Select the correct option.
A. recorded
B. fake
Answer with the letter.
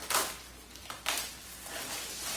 A